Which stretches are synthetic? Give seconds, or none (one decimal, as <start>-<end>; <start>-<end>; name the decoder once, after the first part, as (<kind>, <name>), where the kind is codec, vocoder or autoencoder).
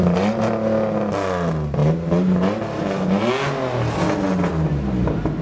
none